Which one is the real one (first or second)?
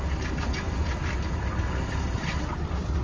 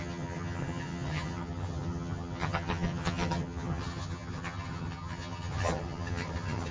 first